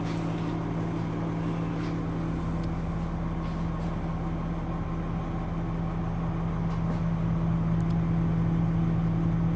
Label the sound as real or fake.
real